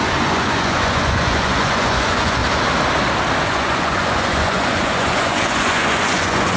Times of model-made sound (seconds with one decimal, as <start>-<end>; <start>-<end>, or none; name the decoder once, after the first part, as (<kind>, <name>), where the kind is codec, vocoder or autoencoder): 0.0-2.4 (vocoder, Vocos); 3.4-6.6